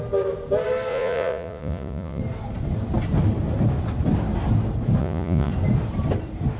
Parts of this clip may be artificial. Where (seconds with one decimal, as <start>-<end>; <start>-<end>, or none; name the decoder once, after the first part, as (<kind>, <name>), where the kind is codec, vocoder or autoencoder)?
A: 0.9-2.2 (vocoder, Vocos); 5.0-5.5